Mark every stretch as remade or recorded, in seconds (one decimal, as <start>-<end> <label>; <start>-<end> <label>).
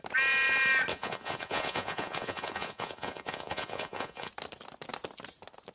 0.0-0.9 recorded; 0.9-4.3 remade; 4.3-5.7 recorded